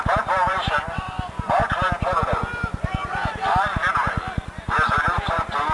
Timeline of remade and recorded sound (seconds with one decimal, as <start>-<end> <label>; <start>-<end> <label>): 0.0-1.6 remade; 1.6-4.9 recorded; 4.9-5.7 remade